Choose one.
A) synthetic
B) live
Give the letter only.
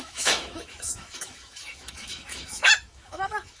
A